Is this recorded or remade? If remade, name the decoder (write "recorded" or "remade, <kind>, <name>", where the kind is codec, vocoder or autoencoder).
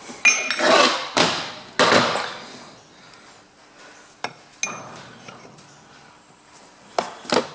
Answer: recorded